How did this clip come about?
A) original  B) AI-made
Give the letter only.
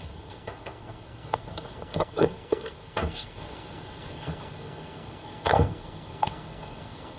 B